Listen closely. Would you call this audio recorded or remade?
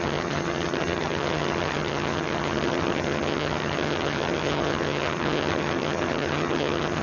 remade